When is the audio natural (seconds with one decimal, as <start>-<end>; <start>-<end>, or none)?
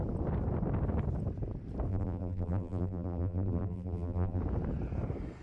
0.0-1.9; 4.4-5.4